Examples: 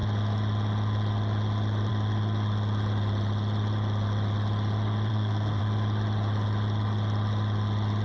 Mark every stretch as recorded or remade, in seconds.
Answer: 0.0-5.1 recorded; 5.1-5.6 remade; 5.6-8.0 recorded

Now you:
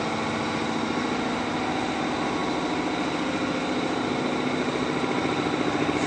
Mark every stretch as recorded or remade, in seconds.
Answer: 0.0-6.1 recorded

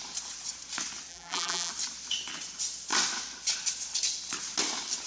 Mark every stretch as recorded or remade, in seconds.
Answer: 0.0-1.1 recorded; 1.1-1.7 remade; 1.7-5.1 recorded